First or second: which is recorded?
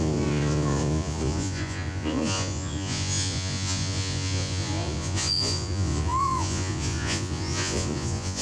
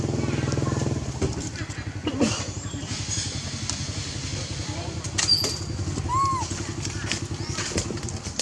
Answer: second